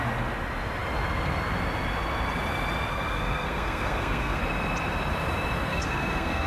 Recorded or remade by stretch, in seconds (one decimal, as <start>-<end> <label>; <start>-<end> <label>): 0.0-2.9 recorded; 2.9-4.4 remade; 4.4-5.7 recorded; 5.7-6.5 remade